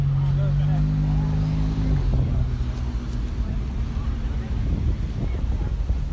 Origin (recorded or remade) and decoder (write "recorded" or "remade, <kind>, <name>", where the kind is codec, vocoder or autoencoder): recorded